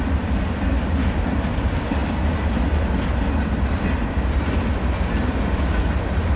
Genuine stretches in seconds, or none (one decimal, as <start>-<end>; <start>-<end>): 0.0-6.4